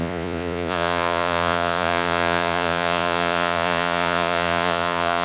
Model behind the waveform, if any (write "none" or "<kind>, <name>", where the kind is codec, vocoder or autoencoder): vocoder, Vocos